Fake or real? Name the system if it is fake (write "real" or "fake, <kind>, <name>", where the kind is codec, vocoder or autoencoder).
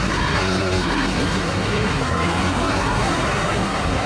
fake, codec, SNAC